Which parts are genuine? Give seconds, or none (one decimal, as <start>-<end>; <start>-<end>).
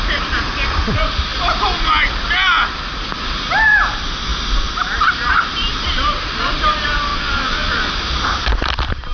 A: 0.0-7.1; 7.9-9.1